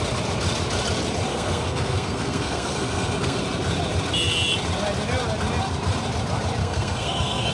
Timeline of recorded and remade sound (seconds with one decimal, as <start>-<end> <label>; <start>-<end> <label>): 0.0-1.3 recorded; 1.3-3.4 remade; 3.4-6.6 recorded; 6.6-7.5 remade